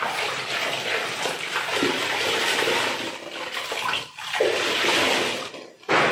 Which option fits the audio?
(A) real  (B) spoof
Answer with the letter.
A